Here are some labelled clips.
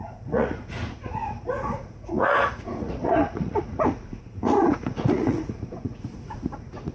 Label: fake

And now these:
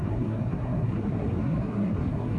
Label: fake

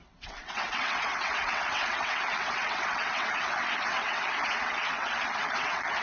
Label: fake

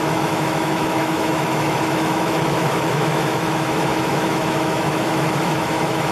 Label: fake